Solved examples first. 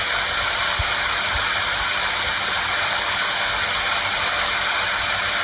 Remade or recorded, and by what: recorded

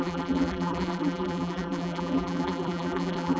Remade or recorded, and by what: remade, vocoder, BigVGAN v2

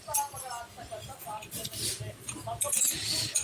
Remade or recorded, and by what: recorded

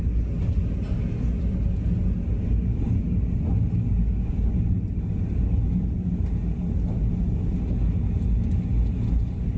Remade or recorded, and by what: recorded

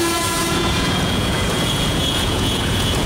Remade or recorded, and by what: remade, vocoder, Vocos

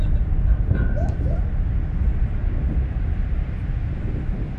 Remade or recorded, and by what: recorded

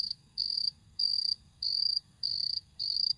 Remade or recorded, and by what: remade, codec, SNAC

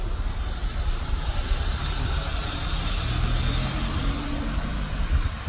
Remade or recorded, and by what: recorded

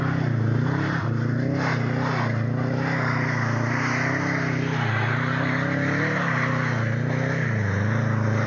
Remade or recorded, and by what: recorded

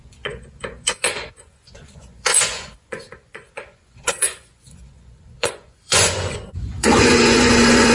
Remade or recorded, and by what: remade, vocoder, Vocos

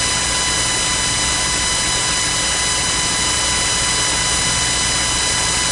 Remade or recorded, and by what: recorded